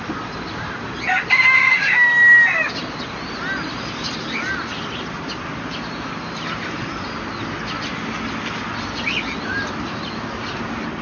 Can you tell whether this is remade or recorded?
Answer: recorded